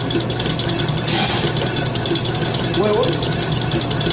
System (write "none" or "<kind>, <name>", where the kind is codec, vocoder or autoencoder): none